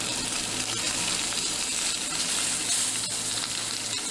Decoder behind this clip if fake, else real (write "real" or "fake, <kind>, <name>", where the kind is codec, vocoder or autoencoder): real